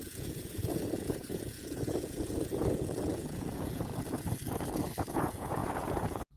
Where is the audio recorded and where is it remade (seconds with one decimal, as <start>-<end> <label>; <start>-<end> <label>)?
0.0-3.9 remade; 3.9-5.1 recorded; 5.1-6.4 remade